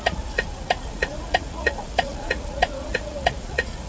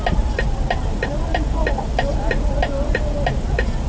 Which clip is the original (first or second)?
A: second